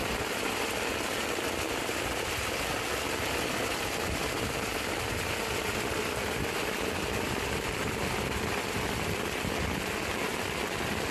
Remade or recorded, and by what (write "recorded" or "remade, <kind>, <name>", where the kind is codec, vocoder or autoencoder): recorded